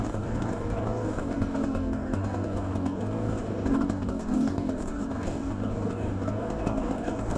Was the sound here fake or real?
fake